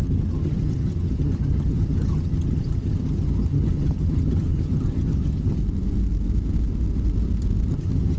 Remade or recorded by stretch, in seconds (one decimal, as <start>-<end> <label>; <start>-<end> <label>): 0.0-5.6 remade; 5.6-7.7 recorded; 7.7-8.2 remade